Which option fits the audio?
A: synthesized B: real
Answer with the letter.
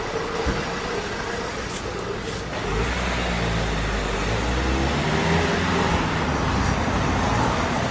B